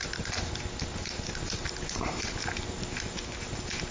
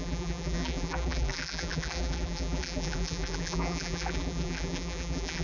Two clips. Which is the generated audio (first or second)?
second